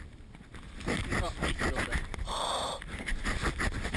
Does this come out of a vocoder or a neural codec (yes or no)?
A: yes